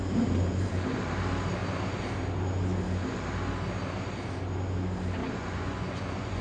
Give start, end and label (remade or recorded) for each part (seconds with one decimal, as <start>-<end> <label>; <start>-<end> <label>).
0.0-5.2 recorded; 5.2-6.4 remade